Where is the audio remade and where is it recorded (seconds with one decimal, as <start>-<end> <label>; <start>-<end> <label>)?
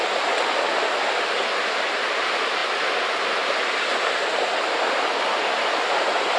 0.0-6.4 recorded